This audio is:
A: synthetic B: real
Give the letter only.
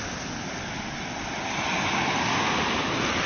B